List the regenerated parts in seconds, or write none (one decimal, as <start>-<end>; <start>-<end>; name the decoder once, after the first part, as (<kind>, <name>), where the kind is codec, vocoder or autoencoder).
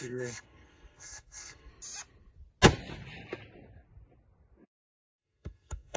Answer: 0.0-1.7 (codec, SNAC); 5.1-6.0